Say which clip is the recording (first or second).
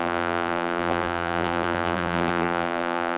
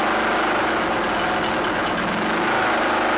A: second